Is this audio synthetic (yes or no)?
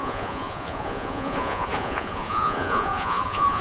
yes